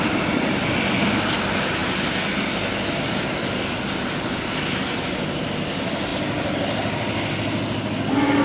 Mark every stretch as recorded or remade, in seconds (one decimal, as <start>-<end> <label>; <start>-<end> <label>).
0.0-8.4 recorded